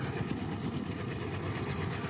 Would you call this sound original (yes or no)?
yes